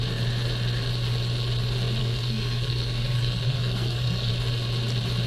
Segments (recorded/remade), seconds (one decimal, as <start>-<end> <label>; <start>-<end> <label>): 0.0-2.0 recorded; 2.0-4.3 remade; 4.3-5.3 recorded